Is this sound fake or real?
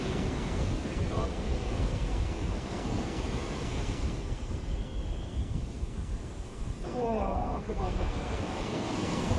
fake